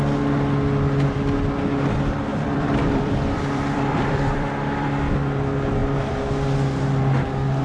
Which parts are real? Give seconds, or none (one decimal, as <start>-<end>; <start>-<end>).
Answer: 0.0-2.3; 4.9-7.6